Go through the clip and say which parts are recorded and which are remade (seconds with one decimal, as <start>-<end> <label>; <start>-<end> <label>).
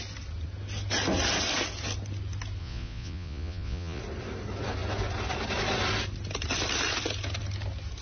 0.0-2.6 recorded; 2.6-4.0 remade; 4.0-8.0 recorded